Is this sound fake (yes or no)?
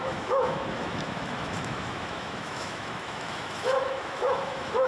yes